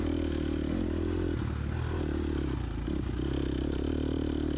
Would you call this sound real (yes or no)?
yes